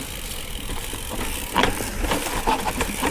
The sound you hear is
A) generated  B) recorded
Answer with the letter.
A